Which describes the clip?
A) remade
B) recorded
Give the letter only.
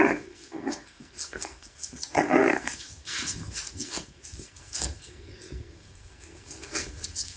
A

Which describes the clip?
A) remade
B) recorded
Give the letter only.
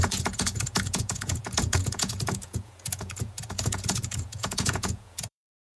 A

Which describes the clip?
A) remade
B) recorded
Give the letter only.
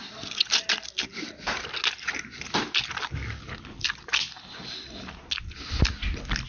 B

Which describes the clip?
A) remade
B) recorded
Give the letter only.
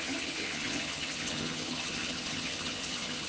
A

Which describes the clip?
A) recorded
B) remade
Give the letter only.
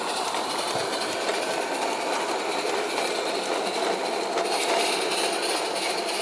A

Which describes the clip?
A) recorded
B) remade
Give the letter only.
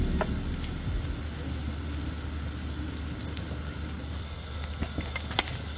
A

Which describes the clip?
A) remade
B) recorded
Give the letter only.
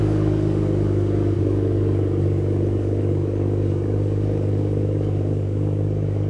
A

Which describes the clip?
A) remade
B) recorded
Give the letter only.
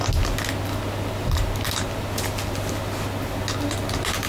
B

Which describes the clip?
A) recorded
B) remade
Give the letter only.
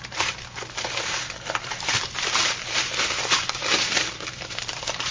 B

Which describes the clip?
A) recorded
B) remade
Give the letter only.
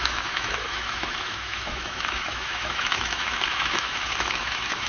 B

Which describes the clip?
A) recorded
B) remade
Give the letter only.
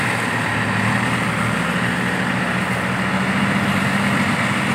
A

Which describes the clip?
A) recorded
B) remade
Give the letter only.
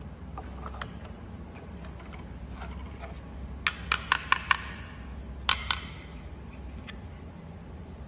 A